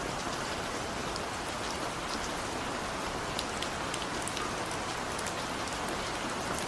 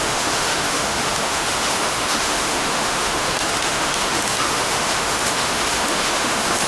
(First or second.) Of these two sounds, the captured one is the first